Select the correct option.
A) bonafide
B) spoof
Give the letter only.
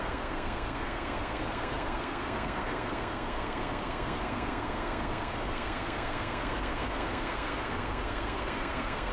B